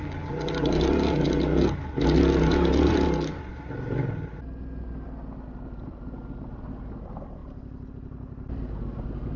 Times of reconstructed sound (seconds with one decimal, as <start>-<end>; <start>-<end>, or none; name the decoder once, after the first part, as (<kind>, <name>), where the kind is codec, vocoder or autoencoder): none